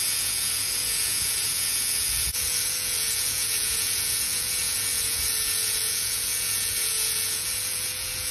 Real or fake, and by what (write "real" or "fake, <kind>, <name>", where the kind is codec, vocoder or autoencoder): fake, vocoder, Vocos